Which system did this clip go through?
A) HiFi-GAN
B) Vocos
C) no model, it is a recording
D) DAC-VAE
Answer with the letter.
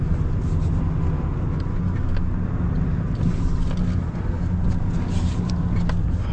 C